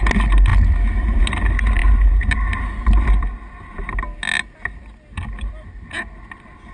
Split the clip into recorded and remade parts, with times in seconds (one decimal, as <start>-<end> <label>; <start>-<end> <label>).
0.0-6.7 recorded

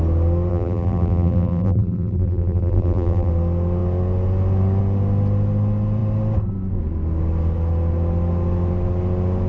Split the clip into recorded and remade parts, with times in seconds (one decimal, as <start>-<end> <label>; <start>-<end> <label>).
0.0-0.5 recorded; 0.5-3.3 remade; 3.3-9.5 recorded